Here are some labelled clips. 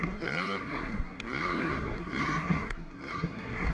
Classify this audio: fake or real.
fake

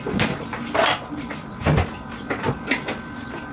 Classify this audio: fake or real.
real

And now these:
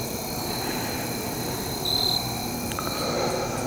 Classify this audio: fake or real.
fake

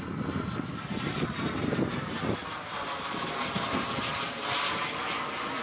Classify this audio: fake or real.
real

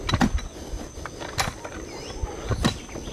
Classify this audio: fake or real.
real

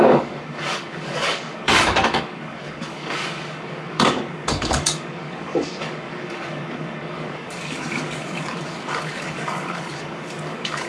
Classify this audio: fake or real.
fake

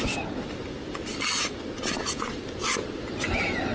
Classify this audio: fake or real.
real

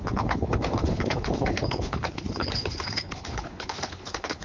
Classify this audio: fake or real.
fake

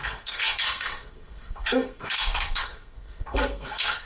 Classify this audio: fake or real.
fake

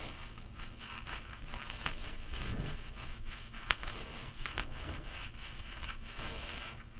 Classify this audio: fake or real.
fake